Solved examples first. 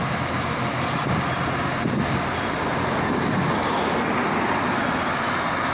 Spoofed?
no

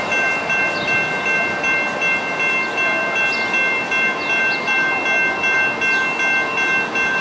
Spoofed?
no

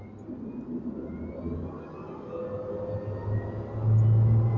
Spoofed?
no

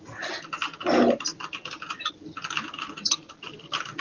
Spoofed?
no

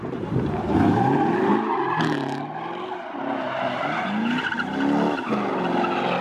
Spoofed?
no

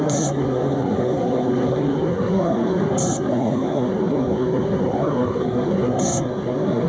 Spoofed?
yes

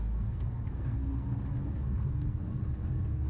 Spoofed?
yes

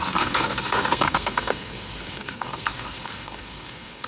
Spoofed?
yes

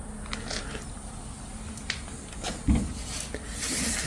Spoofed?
no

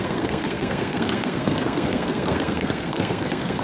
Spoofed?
yes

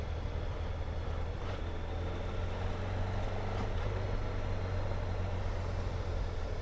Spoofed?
no